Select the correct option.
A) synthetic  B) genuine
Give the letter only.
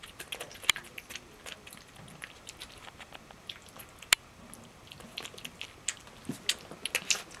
B